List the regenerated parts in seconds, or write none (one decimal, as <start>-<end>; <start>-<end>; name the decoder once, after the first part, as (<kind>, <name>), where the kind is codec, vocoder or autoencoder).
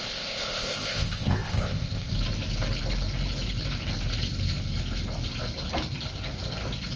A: 0.0-2.1 (codec, ZipCodec)